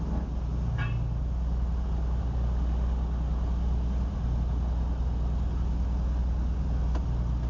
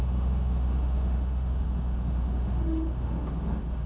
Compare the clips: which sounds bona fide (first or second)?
first